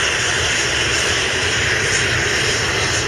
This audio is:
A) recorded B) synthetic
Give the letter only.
A